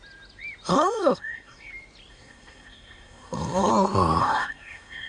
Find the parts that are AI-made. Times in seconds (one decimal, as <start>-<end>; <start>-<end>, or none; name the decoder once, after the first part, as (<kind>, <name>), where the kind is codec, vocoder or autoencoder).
0.7-1.7 (codec, SNAC); 2.1-3.7; 4.2-5.1